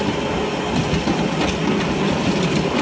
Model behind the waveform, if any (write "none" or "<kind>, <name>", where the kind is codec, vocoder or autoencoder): none